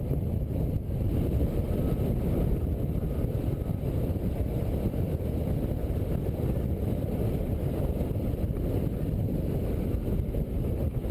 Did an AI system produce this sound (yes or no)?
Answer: no